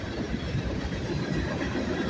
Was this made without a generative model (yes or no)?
no